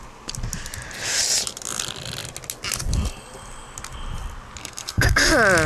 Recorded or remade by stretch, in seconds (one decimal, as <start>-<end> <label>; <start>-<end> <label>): 0.0-4.6 recorded; 4.6-5.2 remade; 5.2-5.7 recorded